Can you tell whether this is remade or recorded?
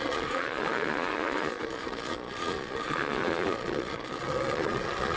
remade